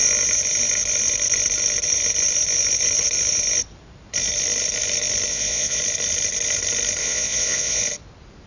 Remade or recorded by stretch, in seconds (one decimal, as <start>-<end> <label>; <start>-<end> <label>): 0.0-5.3 recorded; 5.3-5.8 remade; 5.8-7.0 recorded; 7.0-7.8 remade; 7.8-8.5 recorded